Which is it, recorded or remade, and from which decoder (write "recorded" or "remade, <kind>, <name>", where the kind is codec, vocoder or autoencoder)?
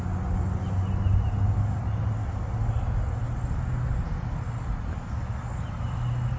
recorded